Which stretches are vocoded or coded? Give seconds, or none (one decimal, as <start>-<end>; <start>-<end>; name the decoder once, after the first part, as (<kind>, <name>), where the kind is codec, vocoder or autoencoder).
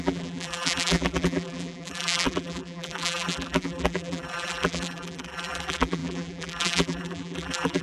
0.0-7.8 (vocoder, BigVGAN v2)